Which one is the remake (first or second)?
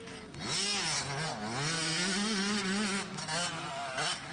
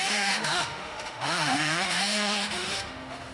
second